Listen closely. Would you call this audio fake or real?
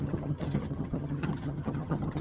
fake